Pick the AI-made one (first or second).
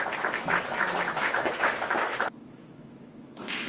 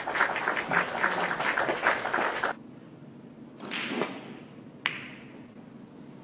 first